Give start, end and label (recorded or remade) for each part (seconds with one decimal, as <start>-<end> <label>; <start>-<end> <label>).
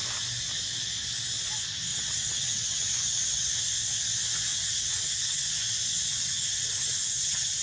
0.0-1.9 recorded; 1.9-3.6 remade; 3.6-4.5 recorded; 4.5-5.5 remade; 5.5-6.1 recorded; 6.1-7.6 remade